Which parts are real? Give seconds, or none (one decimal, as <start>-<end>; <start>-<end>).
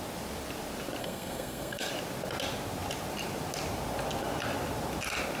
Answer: 0.0-1.0; 1.9-5.4